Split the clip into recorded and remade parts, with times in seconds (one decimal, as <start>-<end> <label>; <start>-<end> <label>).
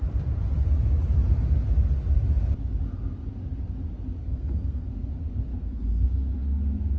0.0-4.2 recorded; 4.2-5.1 remade; 5.1-5.5 recorded; 5.5-6.6 remade; 6.6-7.0 recorded